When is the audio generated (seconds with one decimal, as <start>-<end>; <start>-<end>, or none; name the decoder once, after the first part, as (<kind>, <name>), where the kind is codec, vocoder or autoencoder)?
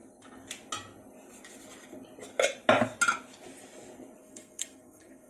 4.2-5.3 (codec, SNAC)